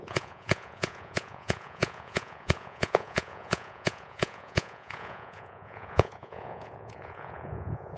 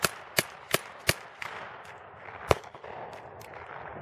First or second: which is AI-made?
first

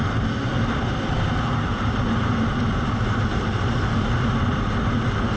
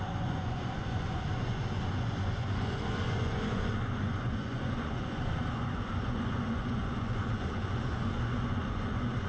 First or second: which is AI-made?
second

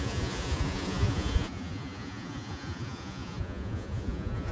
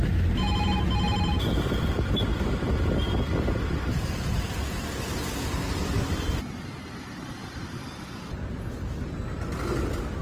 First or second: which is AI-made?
first